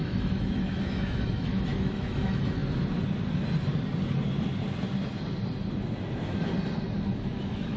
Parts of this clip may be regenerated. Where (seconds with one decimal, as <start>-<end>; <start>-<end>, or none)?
0.0-2.6; 7.2-7.8